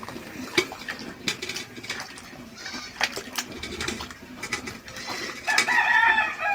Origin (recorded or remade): recorded